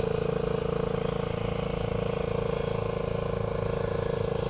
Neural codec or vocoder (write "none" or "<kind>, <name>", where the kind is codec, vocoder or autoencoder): none